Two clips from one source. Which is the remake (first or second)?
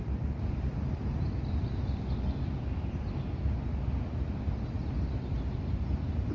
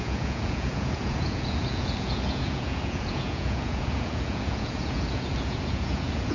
second